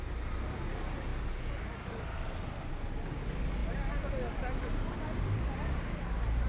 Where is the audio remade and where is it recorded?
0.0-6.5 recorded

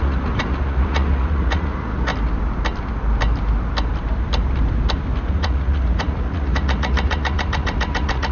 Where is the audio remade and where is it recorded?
0.0-2.1 remade; 2.1-5.3 recorded; 5.3-8.3 remade

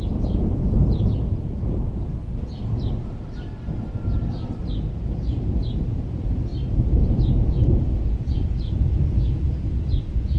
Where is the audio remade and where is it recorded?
0.0-2.2 remade; 2.2-4.9 recorded; 4.9-6.5 remade; 6.5-7.8 recorded; 7.8-10.4 remade

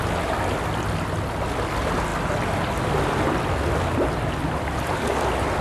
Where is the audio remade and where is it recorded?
0.0-5.6 recorded

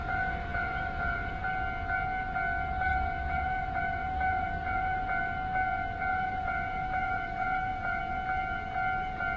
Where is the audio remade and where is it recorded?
0.0-1.4 remade; 1.4-2.9 recorded; 2.9-5.0 remade; 5.0-6.1 recorded; 6.1-8.0 remade; 8.0-9.4 recorded

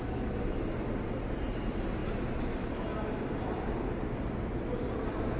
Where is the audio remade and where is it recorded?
0.0-5.4 recorded

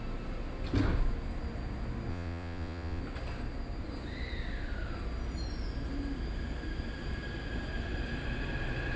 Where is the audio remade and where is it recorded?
0.0-2.1 recorded; 2.1-3.0 remade; 3.0-9.0 recorded